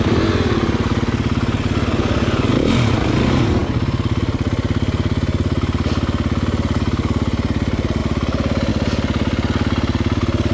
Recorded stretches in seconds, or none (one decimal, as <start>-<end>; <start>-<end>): 0.0-10.5